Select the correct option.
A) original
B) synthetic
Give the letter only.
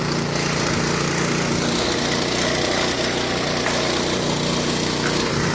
A